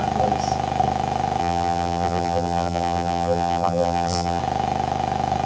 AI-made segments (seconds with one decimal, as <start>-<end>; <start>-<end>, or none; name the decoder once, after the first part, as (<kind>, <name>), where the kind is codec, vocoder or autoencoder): 1.4-4.4 (vocoder, BigVGAN v2)